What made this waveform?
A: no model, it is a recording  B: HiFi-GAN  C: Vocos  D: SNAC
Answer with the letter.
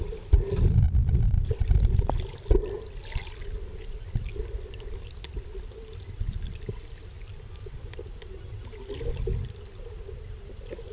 A